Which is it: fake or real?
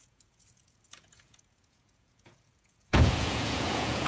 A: fake